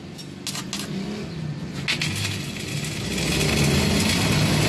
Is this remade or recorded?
recorded